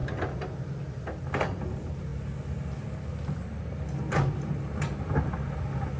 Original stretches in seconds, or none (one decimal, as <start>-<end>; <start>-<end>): 0.0-6.0